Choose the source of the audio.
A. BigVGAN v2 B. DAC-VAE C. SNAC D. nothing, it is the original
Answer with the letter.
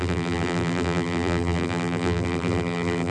A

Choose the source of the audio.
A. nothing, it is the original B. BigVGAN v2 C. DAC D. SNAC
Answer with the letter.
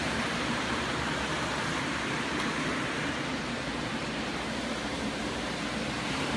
B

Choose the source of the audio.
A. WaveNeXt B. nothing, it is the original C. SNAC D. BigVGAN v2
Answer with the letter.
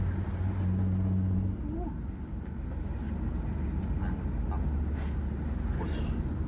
B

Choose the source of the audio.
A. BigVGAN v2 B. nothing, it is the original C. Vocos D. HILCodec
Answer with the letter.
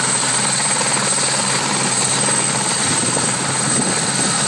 A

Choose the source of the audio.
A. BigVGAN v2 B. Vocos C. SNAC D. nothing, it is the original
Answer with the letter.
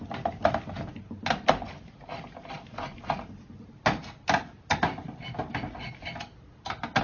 D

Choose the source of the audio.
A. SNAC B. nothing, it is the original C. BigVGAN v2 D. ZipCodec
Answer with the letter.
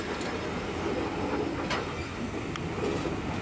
B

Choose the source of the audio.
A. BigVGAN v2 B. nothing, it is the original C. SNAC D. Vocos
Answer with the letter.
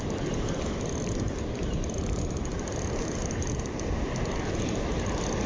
A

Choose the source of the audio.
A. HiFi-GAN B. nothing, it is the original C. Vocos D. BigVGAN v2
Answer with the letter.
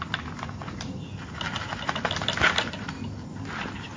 B